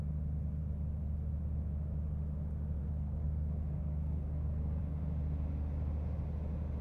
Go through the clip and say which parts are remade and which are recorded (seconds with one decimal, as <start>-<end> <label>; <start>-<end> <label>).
0.0-2.8 recorded; 2.8-4.8 remade; 4.8-6.8 recorded